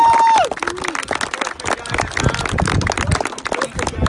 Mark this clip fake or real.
real